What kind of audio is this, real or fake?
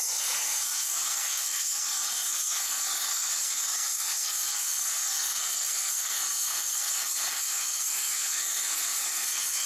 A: fake